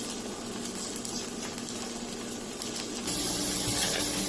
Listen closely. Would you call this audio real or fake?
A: real